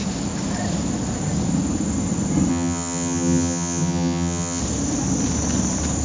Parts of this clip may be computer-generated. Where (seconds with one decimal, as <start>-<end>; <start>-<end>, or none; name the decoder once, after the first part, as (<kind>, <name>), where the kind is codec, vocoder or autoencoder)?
2.5-4.6 (vocoder, HiFi-GAN)